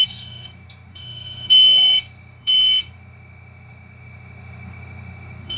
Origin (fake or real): fake